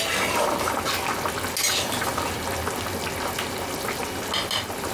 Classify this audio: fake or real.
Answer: real